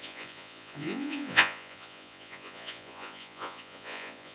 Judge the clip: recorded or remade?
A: remade